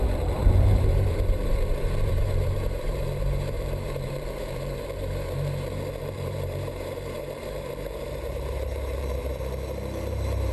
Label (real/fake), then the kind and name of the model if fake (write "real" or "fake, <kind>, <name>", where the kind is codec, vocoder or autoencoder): fake, vocoder, BigVGAN v2